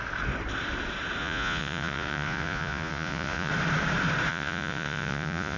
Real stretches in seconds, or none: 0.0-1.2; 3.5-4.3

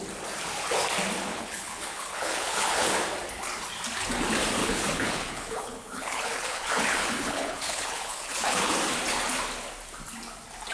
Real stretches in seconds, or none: 0.0-1.3; 2.9-4.6; 8.7-10.7